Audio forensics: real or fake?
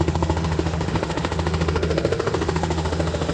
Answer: fake